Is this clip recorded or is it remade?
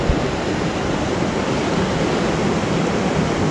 recorded